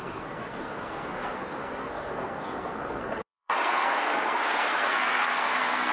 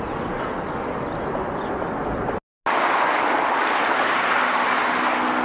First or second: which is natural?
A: second